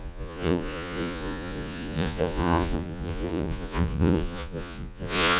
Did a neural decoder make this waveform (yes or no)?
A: yes